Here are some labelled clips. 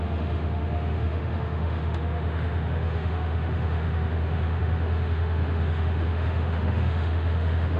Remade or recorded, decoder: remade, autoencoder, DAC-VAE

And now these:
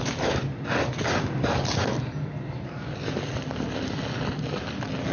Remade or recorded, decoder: recorded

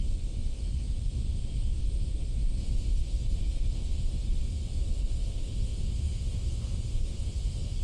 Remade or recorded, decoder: remade, autoencoder, DAC-VAE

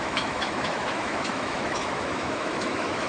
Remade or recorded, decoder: remade, autoencoder, DAC-VAE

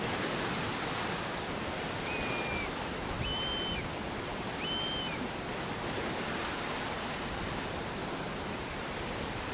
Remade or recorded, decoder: recorded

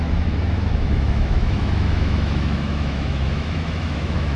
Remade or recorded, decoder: remade, autoencoder, DAC-VAE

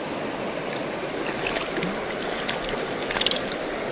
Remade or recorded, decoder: recorded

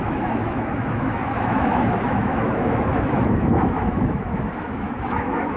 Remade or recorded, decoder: remade, autoencoder, DAC-VAE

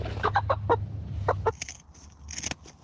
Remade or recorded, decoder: recorded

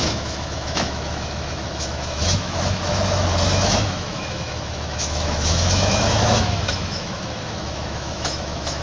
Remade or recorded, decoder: remade, autoencoder, DAC-VAE